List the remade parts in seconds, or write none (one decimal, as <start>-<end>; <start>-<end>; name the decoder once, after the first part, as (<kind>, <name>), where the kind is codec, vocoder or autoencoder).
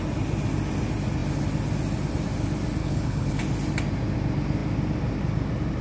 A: 2.8-3.4 (codec, HILCodec)